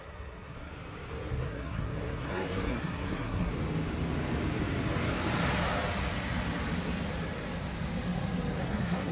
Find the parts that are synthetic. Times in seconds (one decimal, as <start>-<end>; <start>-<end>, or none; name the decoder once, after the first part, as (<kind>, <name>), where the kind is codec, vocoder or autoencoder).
0.0-0.7 (codec, SNAC); 1.3-3.5; 8.6-9.1